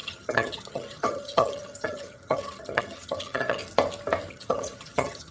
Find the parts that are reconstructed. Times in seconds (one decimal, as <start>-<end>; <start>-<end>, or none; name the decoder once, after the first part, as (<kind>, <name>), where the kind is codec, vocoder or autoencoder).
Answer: 0.0-3.6 (vocoder, HiFi-GAN); 4.3-5.3